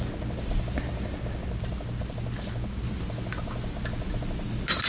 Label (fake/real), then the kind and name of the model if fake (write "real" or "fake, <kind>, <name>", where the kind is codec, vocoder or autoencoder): real